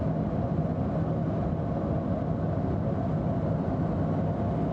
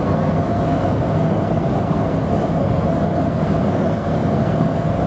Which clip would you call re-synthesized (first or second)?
second